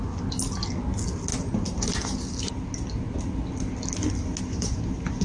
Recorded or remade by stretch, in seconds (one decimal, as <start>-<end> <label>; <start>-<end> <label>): 0.0-5.2 recorded